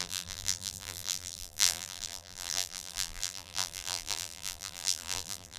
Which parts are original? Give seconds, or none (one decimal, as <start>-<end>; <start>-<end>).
none